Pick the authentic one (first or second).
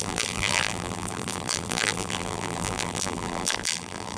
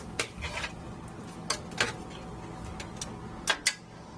second